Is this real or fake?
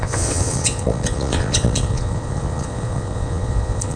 fake